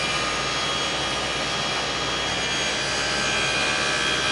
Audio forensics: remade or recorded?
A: recorded